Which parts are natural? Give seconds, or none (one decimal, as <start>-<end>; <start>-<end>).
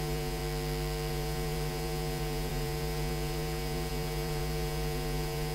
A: 0.4-1.1